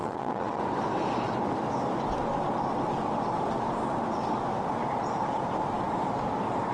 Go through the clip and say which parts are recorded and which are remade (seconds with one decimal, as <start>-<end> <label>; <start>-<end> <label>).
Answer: 0.0-0.6 remade; 0.6-6.7 recorded